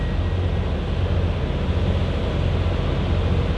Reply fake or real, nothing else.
real